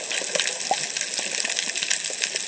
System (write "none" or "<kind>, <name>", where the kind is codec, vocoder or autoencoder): none